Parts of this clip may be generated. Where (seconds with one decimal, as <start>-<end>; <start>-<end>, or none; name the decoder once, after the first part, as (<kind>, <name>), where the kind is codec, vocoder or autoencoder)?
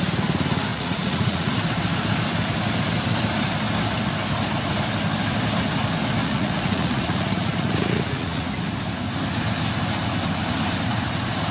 0.7-1.5 (vocoder, Vocos); 6.2-8.5